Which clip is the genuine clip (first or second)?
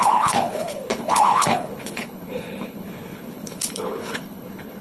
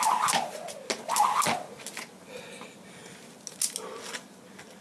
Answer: second